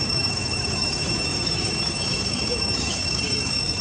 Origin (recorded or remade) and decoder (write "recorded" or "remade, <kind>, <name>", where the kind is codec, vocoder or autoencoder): remade, autoencoder, DAC-VAE